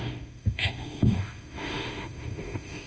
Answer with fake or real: fake